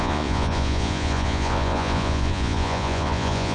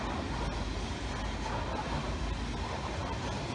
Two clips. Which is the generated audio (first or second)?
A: first